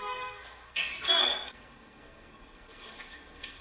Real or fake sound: fake